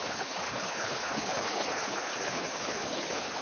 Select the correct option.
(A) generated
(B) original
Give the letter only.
A